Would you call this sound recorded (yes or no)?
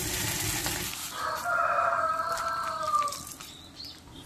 no